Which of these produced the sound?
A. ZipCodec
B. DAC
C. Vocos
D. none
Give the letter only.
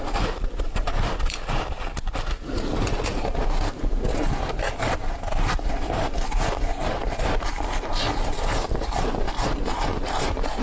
D